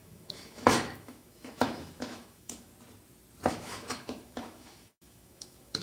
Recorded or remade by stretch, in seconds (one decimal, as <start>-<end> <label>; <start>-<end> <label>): 0.0-2.7 remade; 2.7-3.5 recorded; 3.5-5.8 remade